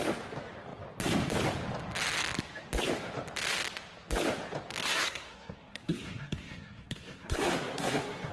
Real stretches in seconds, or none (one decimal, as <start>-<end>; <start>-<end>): 0.0-4.8